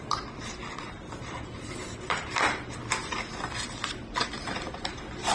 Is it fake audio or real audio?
fake